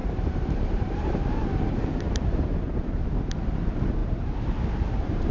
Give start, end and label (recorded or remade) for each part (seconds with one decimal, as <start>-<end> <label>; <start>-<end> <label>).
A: 0.0-3.2 remade; 3.2-4.0 recorded; 4.0-5.3 remade